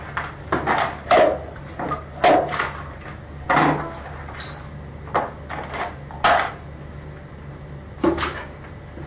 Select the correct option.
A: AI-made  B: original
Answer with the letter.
B